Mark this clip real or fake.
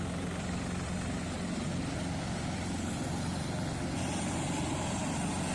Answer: real